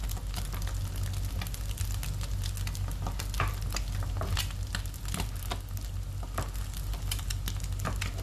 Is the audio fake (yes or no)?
no